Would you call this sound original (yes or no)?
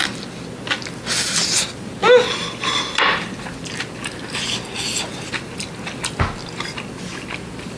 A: yes